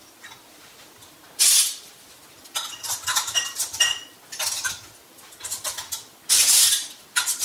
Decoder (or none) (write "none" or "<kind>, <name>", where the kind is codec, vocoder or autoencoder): none